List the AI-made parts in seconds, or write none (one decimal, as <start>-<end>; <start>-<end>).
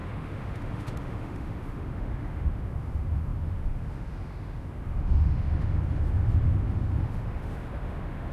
0.0-8.3